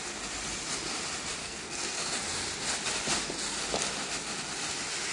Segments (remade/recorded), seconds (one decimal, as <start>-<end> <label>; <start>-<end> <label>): 0.0-1.4 recorded; 1.4-2.1 remade; 2.1-5.1 recorded